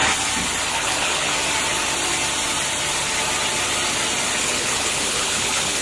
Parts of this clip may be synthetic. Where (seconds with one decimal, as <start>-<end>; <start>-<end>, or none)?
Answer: 0.7-1.3; 4.4-5.8